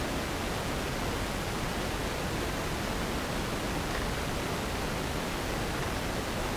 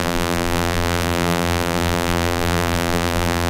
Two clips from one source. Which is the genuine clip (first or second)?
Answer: first